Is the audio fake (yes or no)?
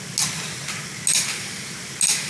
no